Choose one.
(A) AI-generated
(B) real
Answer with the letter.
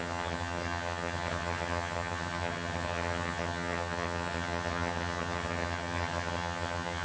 A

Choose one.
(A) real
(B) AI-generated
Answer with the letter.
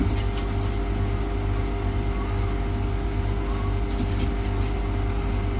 A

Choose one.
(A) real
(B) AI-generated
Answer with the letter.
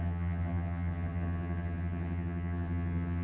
B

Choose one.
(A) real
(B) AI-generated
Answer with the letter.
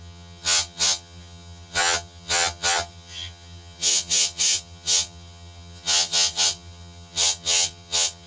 B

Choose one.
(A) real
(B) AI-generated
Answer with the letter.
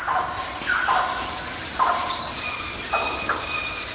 A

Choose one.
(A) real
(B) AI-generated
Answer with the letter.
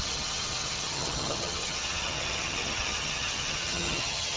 B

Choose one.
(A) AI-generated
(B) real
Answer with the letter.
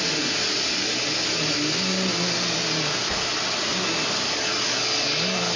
B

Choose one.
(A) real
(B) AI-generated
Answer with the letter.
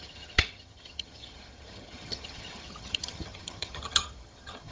B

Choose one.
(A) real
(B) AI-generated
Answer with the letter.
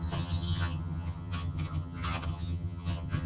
B